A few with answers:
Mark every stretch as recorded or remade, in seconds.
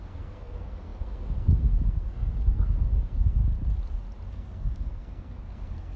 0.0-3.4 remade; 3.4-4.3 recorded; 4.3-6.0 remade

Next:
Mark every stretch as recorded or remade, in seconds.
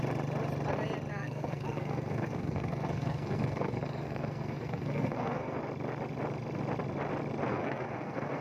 0.0-1.1 recorded; 1.1-5.6 remade; 5.6-7.5 recorded; 7.5-8.4 remade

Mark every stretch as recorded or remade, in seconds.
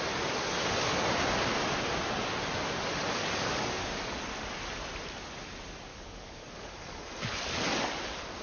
0.0-3.2 recorded; 3.2-4.2 remade; 4.2-5.9 recorded; 5.9-7.0 remade; 7.0-8.4 recorded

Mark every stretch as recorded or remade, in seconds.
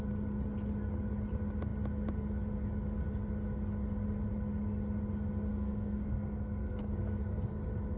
0.0-5.5 recorded; 5.5-6.9 remade; 6.9-8.0 recorded